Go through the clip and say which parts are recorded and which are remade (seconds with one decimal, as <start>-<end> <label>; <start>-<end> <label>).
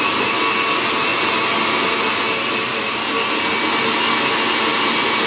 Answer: 0.0-4.7 recorded; 4.7-5.3 remade